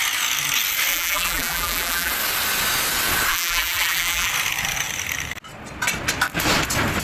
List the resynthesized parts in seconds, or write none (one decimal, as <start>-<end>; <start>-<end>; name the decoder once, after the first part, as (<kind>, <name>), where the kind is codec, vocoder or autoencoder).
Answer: 0.9-2.1 (vocoder, BigVGAN v2); 3.3-4.3